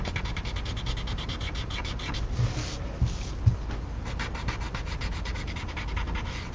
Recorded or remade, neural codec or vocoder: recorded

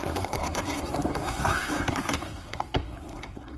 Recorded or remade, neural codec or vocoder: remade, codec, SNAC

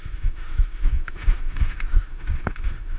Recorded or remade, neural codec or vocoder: remade, autoencoder, DAC-VAE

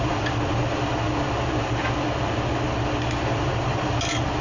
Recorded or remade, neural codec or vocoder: recorded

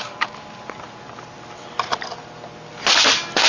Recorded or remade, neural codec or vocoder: remade, vocoder, BigVGAN v2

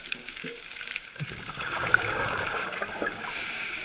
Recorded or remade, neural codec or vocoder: remade, codec, DAC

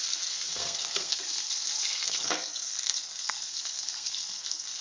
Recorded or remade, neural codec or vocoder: remade, codec, SNAC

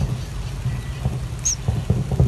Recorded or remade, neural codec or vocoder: recorded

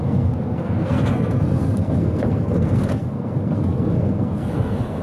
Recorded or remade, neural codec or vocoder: remade, codec, SNAC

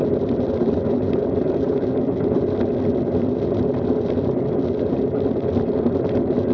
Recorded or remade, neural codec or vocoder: recorded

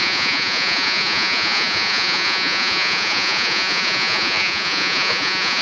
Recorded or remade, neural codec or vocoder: remade, vocoder, Vocos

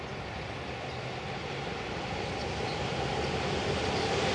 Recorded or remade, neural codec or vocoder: recorded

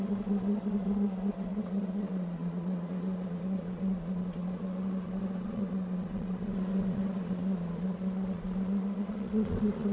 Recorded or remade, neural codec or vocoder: remade, vocoder, Vocos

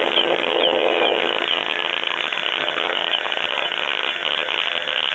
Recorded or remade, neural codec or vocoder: remade, vocoder, HiFi-GAN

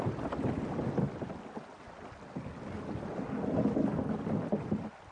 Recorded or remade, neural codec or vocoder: recorded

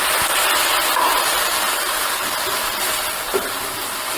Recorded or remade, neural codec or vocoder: recorded